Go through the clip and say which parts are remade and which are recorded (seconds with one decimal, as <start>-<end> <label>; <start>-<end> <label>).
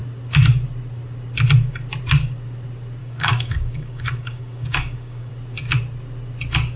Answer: 0.0-3.0 recorded; 3.0-5.3 remade; 5.3-6.8 recorded